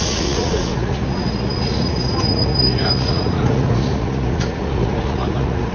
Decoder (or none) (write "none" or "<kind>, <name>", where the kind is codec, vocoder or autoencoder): vocoder, Vocos